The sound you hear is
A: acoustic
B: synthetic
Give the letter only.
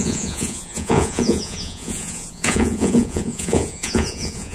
B